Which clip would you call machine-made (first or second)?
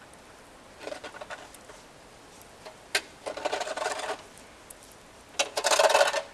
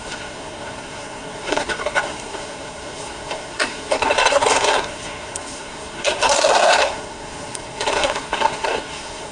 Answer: second